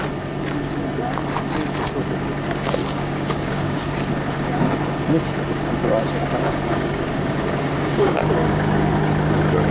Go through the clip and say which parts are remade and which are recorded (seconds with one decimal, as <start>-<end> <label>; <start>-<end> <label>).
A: 0.0-2.8 recorded; 2.8-3.8 remade; 3.8-6.2 recorded; 6.2-8.9 remade; 8.9-9.7 recorded